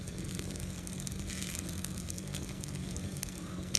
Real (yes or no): no